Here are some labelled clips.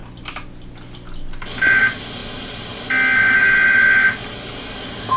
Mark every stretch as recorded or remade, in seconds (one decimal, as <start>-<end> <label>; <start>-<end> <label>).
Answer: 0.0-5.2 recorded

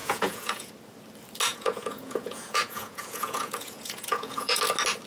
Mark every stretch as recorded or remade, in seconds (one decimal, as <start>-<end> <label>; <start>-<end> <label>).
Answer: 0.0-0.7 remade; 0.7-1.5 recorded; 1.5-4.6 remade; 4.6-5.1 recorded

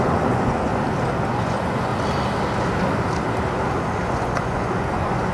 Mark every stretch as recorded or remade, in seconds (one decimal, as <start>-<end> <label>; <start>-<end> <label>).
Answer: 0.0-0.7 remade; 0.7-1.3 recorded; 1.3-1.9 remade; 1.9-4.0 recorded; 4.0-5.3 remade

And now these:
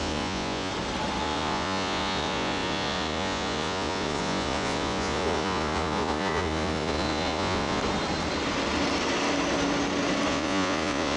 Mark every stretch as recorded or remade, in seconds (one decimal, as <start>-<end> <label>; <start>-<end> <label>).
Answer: 0.0-0.7 remade; 0.7-1.2 recorded; 1.2-7.8 remade; 7.8-10.3 recorded; 10.3-11.2 remade

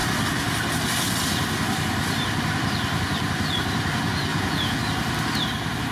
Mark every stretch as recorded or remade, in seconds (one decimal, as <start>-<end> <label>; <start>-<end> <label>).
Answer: 0.0-4.3 recorded; 4.3-4.8 remade; 4.8-5.9 recorded

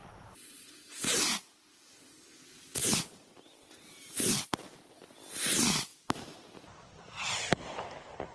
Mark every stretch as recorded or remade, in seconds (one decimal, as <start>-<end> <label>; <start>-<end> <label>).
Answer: 0.0-0.7 remade; 0.7-8.3 recorded

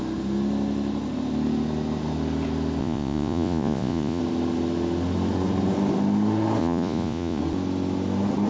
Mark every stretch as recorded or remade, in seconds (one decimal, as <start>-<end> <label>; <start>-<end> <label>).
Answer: 0.0-2.8 recorded; 2.8-4.2 remade; 4.2-6.6 recorded; 6.6-7.4 remade; 7.4-8.5 recorded

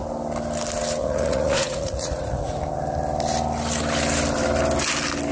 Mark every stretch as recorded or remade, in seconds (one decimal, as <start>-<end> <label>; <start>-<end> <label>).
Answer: 0.0-1.0 recorded; 1.0-2.6 remade; 2.6-5.3 recorded